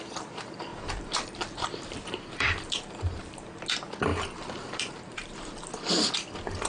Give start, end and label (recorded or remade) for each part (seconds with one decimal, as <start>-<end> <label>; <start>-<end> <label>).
0.0-0.7 recorded; 0.7-3.6 remade; 3.6-4.1 recorded; 4.1-5.3 remade; 5.3-6.7 recorded